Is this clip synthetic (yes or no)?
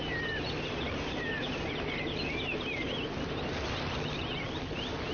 no